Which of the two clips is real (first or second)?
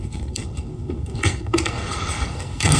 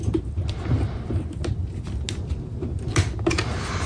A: second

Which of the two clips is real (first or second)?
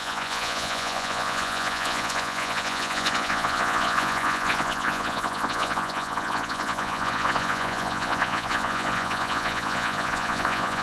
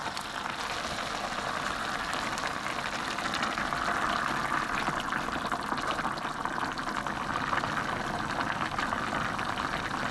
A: second